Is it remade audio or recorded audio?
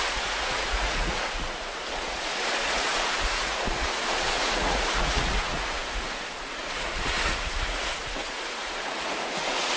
remade